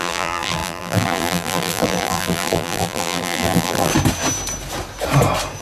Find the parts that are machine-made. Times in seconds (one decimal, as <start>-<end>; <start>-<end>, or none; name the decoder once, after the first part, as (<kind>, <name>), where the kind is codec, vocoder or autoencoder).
0.0-3.9 (vocoder, BigVGAN v2)

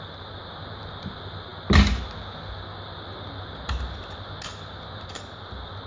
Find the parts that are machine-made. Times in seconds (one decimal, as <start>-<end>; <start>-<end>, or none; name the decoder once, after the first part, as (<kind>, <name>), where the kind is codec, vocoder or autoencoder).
none

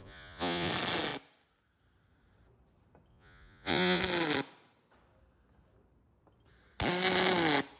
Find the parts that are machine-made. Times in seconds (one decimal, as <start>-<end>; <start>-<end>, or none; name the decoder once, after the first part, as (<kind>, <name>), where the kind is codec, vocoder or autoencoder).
0.0-0.7 (vocoder, Vocos); 3.1-4.0

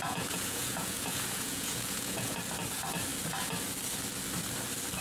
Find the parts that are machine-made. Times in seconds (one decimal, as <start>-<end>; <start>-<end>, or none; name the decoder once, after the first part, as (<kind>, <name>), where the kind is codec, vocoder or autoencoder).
0.0-2.4 (vocoder, Vocos)

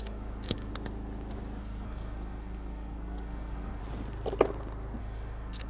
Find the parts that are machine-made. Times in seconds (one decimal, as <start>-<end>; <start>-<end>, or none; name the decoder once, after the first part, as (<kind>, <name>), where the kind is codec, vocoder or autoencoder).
0.0-0.7 (codec, SNAC); 1.6-3.8; 5.0-5.7